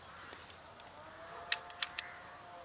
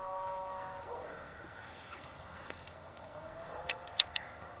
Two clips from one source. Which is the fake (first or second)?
second